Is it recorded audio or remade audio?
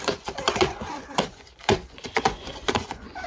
remade